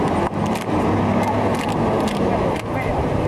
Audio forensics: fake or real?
real